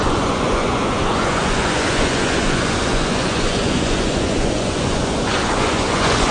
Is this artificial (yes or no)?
yes